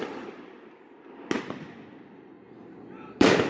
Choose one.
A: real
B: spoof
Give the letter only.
A